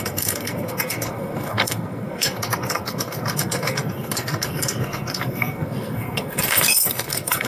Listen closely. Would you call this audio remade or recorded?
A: remade